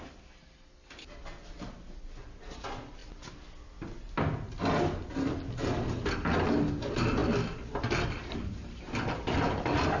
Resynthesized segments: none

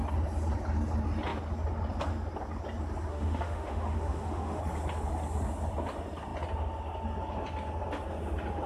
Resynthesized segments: 3.1-4.6 (autoencoder, DAC-VAE)

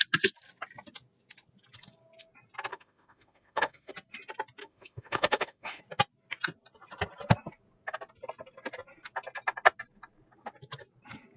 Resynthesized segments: 2.7-3.9 (autoencoder, DAC-VAE); 4.6-5.8